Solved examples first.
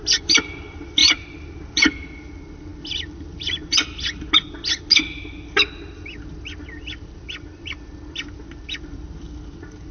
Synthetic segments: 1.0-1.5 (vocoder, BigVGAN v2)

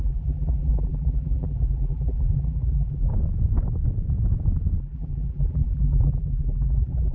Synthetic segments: 0.0-3.1 (vocoder, BigVGAN v2); 4.8-7.1

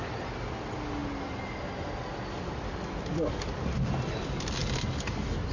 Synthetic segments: none

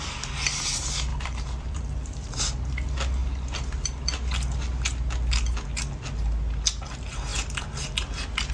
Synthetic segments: 1.1-2.3 (vocoder, BigVGAN v2)